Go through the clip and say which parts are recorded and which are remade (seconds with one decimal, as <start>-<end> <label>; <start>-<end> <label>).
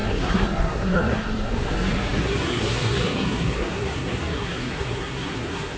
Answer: 0.0-5.8 remade